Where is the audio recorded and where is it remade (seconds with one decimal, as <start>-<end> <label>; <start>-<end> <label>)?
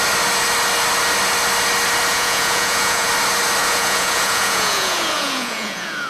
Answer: 0.0-2.1 recorded; 2.1-3.1 remade; 3.1-3.6 recorded; 3.6-6.1 remade